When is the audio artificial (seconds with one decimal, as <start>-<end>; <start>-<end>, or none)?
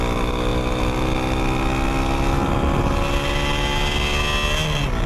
none